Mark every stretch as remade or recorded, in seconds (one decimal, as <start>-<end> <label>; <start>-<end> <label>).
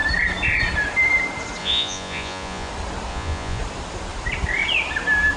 0.0-1.6 recorded; 1.6-2.7 remade; 2.7-3.1 recorded; 3.1-3.6 remade; 3.6-5.4 recorded